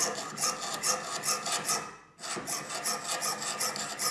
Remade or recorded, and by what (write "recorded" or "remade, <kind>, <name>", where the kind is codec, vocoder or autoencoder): recorded